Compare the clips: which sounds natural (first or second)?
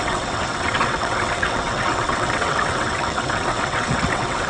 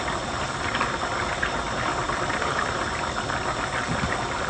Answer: second